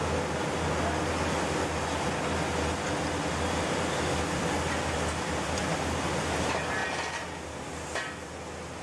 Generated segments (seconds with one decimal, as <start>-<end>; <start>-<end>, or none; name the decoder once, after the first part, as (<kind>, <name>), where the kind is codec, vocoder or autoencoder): none